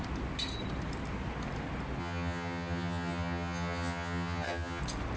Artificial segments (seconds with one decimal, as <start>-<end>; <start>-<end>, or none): 2.0-4.8